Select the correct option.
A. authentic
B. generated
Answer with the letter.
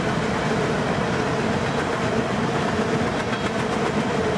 A